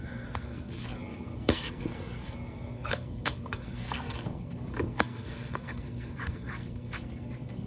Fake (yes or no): yes